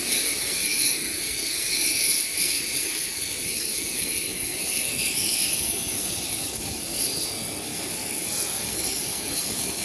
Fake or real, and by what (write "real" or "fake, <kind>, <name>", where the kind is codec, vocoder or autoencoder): fake, codec, SNAC